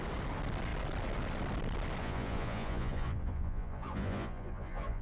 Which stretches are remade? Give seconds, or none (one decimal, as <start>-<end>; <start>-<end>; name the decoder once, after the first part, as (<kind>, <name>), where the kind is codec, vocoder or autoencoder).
2.0-5.0 (vocoder, Vocos)